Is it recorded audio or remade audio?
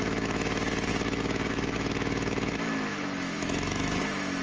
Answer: remade